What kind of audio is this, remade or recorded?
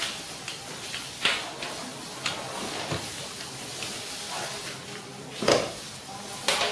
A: recorded